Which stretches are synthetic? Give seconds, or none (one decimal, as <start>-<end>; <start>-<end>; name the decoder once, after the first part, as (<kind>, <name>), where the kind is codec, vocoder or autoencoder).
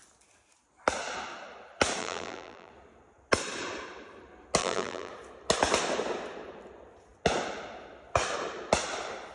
2.0-2.7 (vocoder, BigVGAN v2); 4.6-5.1